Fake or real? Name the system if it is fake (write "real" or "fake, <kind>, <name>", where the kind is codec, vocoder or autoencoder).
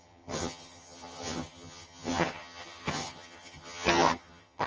fake, vocoder, HiFi-GAN